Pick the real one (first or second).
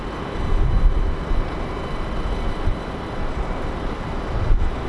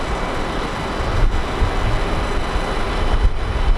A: second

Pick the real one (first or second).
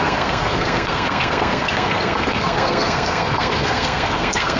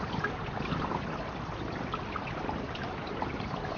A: second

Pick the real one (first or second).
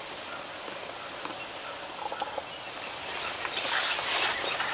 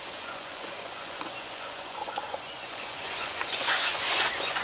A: first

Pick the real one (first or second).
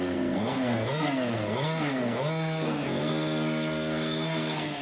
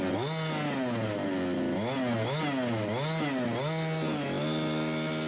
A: second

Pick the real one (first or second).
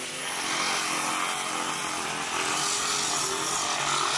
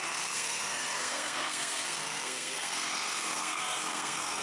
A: first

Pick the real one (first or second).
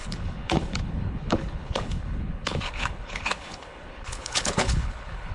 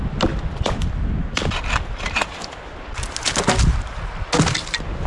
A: second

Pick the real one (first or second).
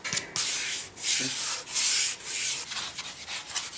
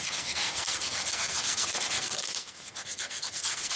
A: first